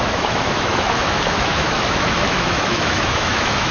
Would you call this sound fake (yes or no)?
yes